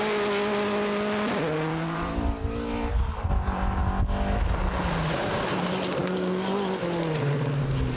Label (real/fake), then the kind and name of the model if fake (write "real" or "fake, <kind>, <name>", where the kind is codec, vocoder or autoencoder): real